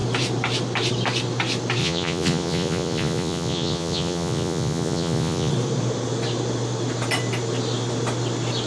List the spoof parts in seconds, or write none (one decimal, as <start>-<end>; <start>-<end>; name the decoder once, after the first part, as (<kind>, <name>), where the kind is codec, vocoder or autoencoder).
1.8-5.5 (vocoder, Vocos)